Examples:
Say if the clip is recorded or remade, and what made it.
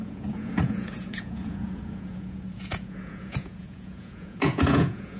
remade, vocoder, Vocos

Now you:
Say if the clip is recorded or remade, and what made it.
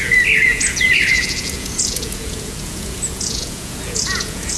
remade, vocoder, Vocos